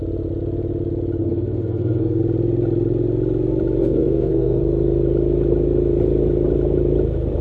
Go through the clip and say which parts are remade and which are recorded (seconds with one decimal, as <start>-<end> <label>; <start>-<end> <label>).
0.0-1.2 recorded; 1.2-2.2 remade; 2.2-3.8 recorded; 3.8-4.6 remade; 4.6-7.4 recorded